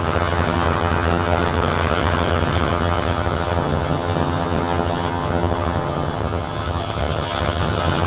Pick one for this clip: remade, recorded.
remade